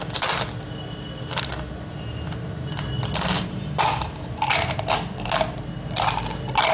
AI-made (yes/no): yes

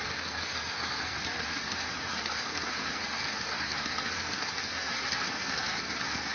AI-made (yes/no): yes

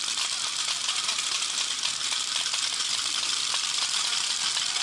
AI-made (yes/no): yes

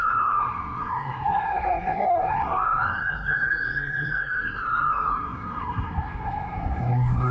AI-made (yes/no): yes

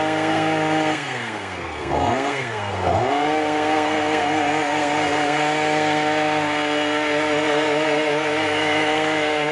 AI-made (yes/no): yes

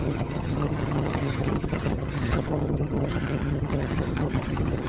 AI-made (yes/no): yes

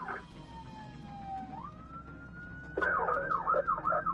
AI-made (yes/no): no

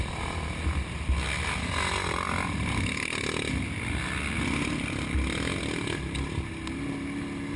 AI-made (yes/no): no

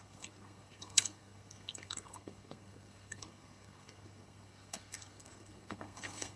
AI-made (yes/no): yes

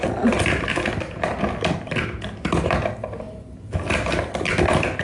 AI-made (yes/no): no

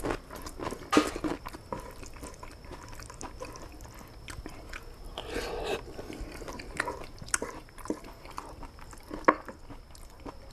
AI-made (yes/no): no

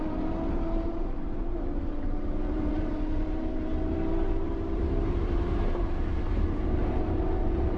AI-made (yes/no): yes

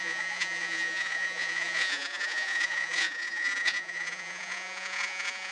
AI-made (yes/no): yes